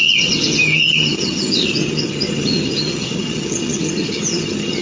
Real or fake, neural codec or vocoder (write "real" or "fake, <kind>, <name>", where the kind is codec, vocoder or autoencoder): fake, vocoder, HiFi-GAN